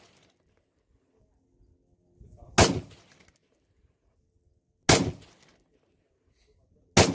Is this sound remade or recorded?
recorded